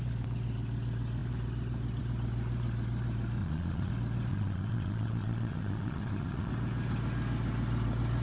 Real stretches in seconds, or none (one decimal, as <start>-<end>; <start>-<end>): 0.0-3.4; 3.9-4.3; 6.5-8.2